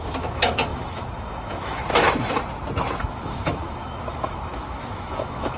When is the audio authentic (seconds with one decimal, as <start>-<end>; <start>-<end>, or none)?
1.8-3.0